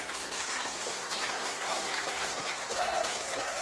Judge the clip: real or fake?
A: fake